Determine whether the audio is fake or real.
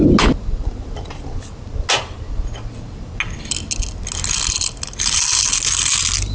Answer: real